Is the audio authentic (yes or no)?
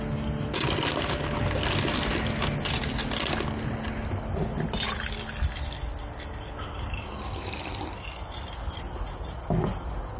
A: yes